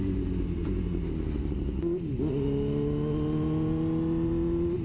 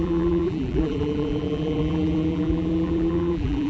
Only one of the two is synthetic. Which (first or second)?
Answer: second